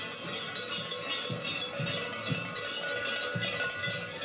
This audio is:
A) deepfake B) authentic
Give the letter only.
B